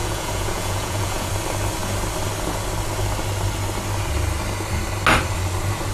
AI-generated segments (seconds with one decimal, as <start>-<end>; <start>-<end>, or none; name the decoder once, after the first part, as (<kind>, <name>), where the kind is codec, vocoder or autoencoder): 0.0-1.3 (vocoder, Vocos)